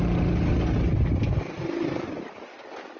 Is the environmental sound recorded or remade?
recorded